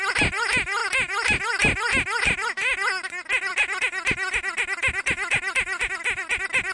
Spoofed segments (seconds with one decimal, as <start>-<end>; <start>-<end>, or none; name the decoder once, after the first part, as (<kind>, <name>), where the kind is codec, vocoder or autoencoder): none